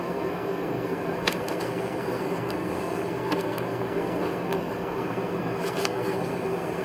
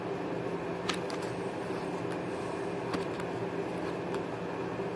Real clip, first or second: second